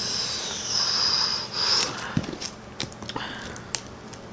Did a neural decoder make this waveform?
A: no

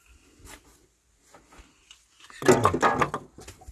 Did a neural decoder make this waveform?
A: no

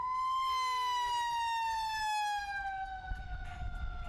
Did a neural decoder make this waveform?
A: no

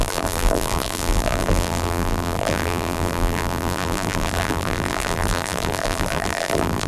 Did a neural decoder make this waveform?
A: yes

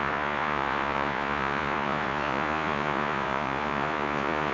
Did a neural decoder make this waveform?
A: yes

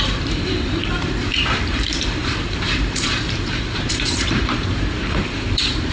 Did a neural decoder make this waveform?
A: yes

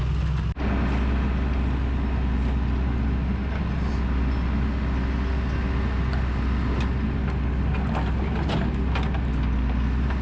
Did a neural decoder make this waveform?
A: no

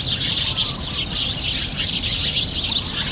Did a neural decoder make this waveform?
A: no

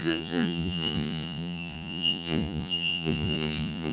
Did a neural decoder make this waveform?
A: yes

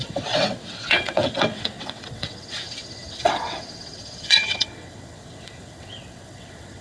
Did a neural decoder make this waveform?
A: yes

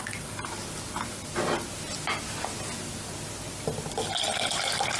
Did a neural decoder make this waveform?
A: no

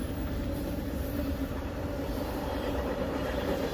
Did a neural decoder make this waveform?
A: yes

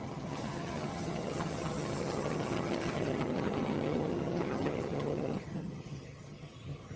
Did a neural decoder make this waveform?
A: yes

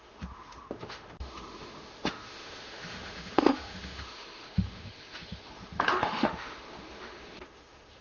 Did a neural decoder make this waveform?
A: yes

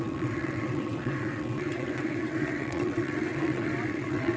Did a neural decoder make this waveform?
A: yes